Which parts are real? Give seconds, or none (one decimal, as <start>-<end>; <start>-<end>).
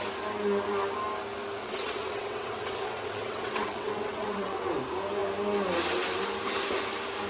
0.0-1.6; 4.7-7.3